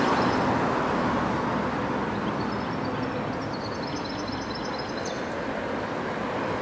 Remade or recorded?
recorded